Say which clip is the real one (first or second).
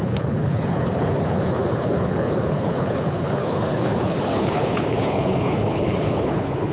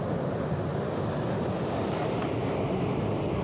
second